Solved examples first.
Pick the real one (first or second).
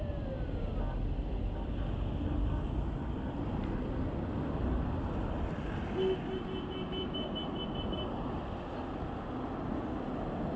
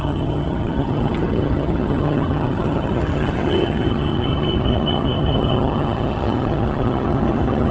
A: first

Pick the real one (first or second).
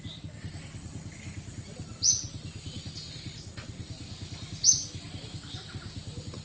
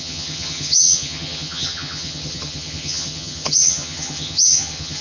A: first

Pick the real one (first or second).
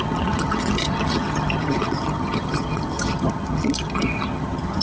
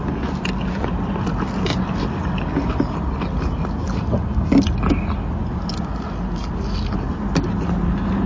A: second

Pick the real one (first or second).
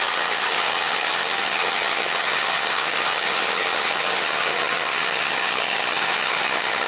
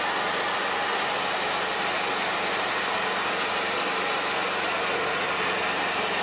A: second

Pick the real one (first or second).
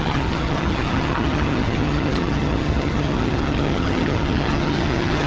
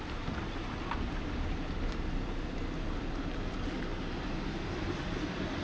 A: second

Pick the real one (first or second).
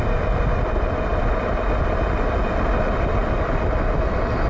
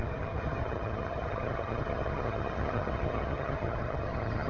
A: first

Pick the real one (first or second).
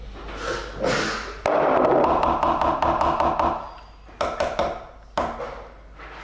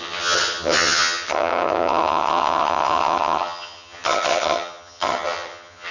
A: first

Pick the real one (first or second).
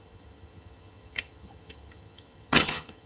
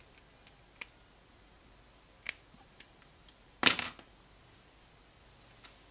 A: second